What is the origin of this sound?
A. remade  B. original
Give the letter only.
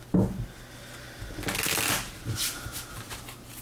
B